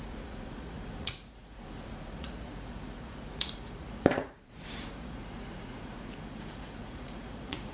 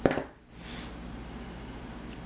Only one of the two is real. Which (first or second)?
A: second